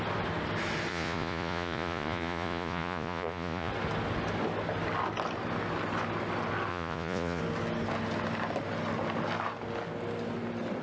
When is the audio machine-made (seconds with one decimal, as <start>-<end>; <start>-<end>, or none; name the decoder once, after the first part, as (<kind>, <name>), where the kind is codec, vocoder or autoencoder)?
0.9-3.7 (vocoder, Vocos); 6.7-7.4